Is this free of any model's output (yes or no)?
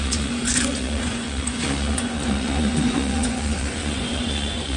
no